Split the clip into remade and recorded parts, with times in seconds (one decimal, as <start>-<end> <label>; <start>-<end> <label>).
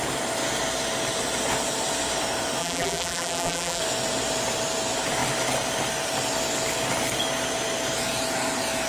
0.0-2.6 recorded; 2.6-3.8 remade; 3.8-8.9 recorded